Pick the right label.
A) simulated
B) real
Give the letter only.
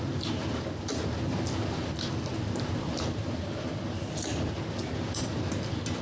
B